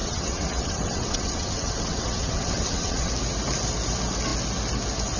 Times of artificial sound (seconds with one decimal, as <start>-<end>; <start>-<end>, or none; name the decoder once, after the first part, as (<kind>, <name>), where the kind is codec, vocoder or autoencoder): 0.0-3.1 (vocoder, WaveNeXt)